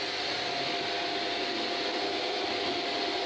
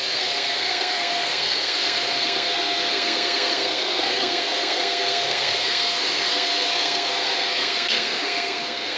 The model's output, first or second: second